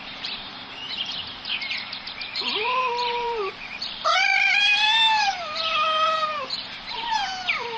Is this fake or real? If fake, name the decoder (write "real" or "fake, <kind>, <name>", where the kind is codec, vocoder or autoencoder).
fake, vocoder, BigVGAN v2